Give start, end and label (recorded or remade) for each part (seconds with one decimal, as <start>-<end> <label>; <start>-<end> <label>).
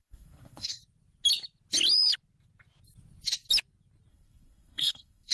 0.0-0.8 remade; 0.8-4.1 recorded; 4.1-5.3 remade